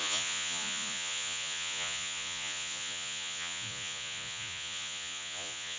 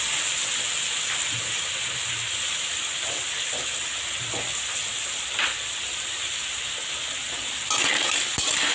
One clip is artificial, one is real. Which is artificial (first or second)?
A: first